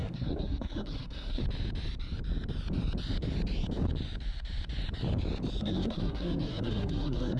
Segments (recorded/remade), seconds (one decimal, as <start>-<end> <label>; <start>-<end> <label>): 0.0-1.4 remade; 1.4-5.6 recorded; 5.6-7.4 remade